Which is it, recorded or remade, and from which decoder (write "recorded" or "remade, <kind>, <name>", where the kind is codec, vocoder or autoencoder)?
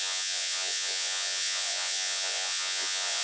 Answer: remade, vocoder, Vocos